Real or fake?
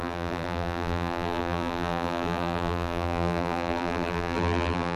fake